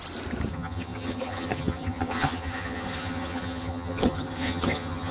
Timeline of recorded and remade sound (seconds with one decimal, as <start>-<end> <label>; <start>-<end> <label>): 0.0-0.5 recorded; 0.5-5.1 remade